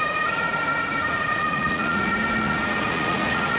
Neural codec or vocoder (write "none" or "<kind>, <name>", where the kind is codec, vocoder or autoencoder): vocoder, Vocos